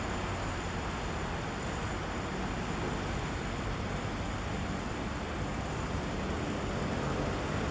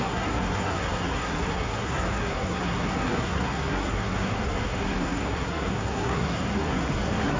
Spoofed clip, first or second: second